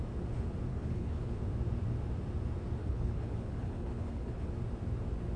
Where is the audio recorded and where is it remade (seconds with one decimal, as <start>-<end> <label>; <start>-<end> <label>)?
0.0-0.7 recorded; 0.7-1.4 remade; 1.4-2.8 recorded; 2.8-4.5 remade; 4.5-5.4 recorded